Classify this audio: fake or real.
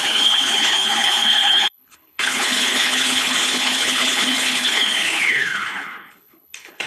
fake